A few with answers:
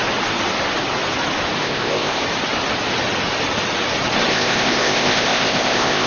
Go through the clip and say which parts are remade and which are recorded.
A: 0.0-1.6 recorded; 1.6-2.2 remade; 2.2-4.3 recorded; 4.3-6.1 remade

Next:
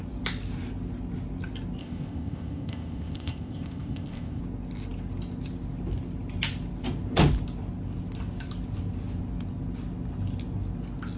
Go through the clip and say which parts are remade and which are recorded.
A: 0.0-1.8 recorded; 1.8-4.4 remade; 4.4-11.2 recorded

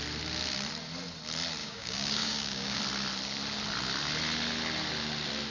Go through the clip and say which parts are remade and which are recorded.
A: 0.0-1.6 recorded; 1.6-2.8 remade; 2.8-5.5 recorded